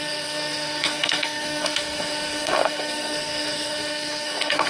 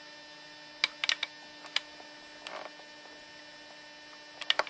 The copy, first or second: first